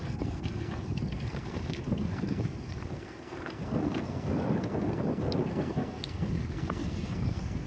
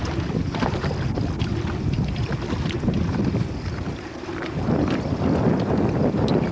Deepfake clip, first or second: first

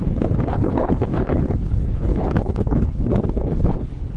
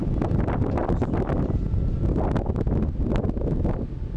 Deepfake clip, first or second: first